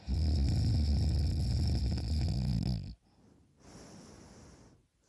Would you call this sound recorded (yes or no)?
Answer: yes